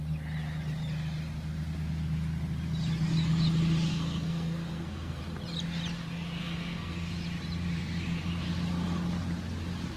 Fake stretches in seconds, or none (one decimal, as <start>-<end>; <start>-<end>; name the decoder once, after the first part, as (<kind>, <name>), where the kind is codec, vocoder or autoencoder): 3.9-5.2 (codec, SNAC); 6.4-7.1